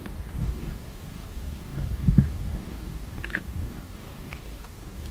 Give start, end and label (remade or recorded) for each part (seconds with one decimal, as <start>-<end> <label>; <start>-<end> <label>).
0.0-5.1 remade